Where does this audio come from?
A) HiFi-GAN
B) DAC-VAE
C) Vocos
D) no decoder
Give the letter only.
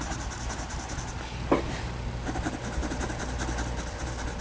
D